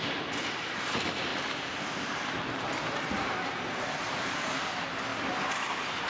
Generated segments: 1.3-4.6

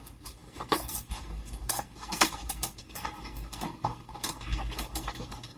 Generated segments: 0.0-5.6

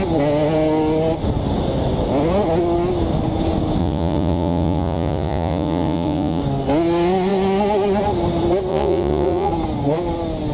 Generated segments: 3.8-6.4; 8.7-9.5

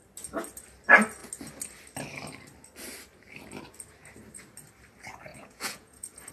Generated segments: 5.3-6.3

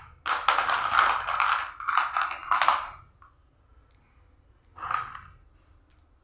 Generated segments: 2.4-3.0

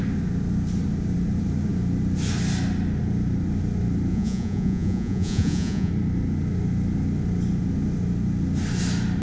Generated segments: 4.1-5.9

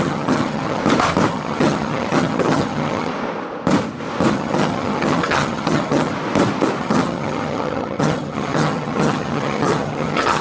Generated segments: 0.0-0.8; 1.3-3.1; 4.3-6.1; 6.8-10.4